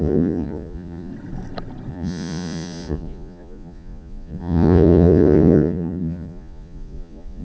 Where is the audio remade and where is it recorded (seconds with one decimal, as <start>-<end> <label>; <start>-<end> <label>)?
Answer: 0.0-1.1 remade; 1.1-1.9 recorded; 1.9-7.4 remade